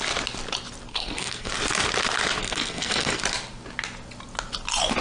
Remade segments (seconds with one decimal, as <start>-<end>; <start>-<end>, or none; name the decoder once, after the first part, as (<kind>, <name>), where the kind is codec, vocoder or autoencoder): 0.9-1.5 (codec, SNAC); 2.4-3.2